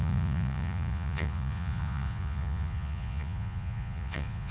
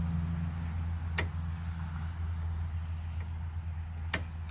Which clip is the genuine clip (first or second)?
second